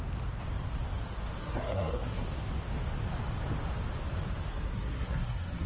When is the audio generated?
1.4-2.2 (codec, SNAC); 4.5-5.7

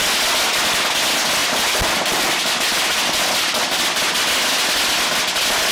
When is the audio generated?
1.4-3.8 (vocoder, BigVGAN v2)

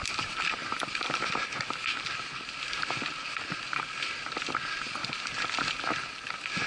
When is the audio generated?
none

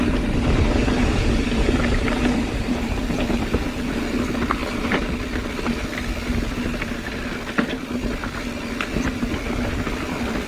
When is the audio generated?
0.0-3.0 (vocoder, BigVGAN v2)

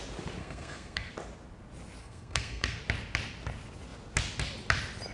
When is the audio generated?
0.4-1.1 (codec, SNAC); 2.0-2.8